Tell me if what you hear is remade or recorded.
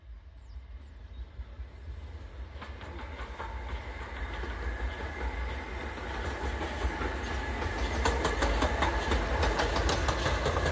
recorded